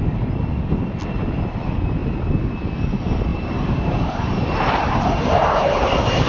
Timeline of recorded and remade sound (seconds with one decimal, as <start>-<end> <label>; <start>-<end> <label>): 0.0-3.3 recorded; 3.3-6.3 remade